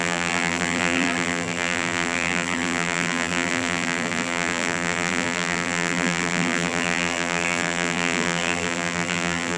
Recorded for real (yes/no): no